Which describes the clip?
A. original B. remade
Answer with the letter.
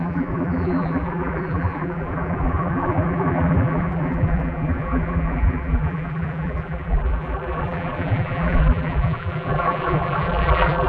B